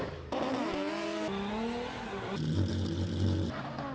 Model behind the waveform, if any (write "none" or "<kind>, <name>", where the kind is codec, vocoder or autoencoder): none